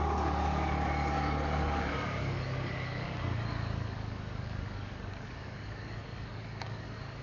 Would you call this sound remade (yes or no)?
yes